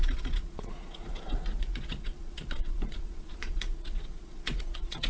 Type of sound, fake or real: fake